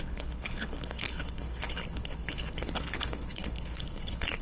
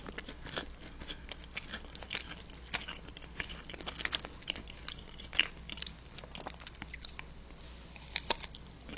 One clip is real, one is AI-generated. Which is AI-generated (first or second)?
first